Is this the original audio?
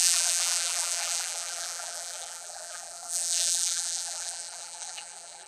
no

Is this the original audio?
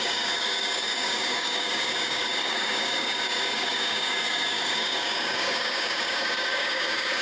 no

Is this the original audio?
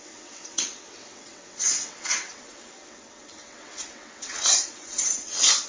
no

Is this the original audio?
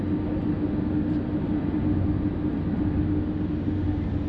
yes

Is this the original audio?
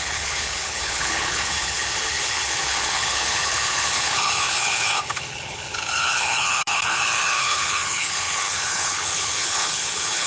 no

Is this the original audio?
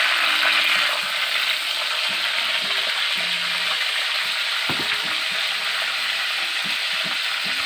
yes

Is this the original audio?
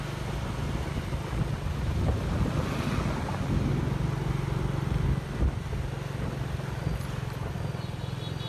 yes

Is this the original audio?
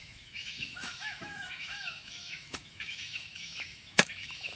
no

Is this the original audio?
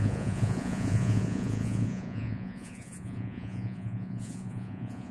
no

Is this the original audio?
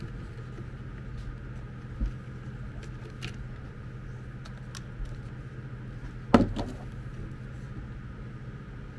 yes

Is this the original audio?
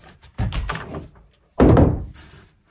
yes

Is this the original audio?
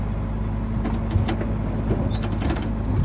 yes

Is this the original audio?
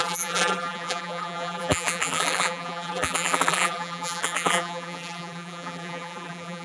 no